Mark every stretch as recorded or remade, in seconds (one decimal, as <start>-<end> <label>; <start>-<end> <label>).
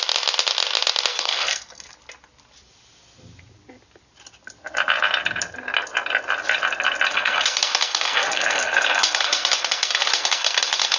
0.0-1.1 recorded; 1.1-1.9 remade; 1.9-7.1 recorded; 7.1-11.0 remade